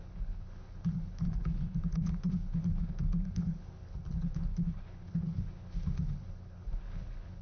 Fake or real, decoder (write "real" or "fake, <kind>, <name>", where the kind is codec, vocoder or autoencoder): fake, codec, HILCodec